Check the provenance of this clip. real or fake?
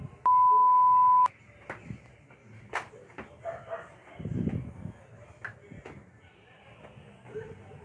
real